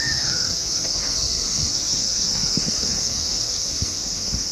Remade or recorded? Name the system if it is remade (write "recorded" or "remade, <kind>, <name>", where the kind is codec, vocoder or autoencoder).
remade, codec, SNAC